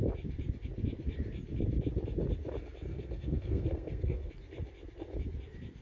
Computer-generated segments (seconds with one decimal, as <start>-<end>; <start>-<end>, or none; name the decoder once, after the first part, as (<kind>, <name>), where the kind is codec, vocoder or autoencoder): 2.9-4.3 (codec, SNAC)